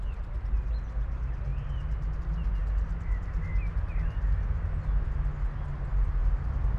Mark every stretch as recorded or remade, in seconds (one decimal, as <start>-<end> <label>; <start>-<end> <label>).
0.0-6.8 recorded